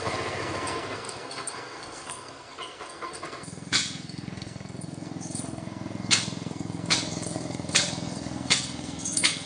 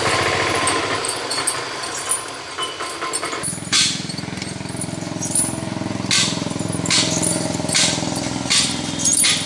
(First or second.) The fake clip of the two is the first